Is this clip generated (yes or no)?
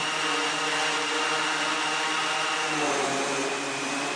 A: no